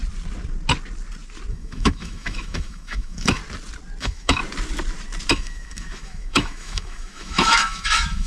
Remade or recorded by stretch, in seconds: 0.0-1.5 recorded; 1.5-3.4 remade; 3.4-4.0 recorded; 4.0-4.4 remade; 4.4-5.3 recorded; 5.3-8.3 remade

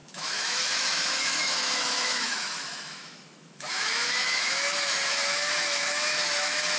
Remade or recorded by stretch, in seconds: 0.0-6.8 remade

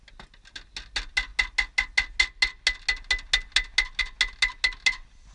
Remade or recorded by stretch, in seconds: 0.0-5.3 recorded